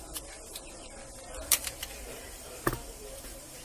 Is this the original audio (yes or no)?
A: no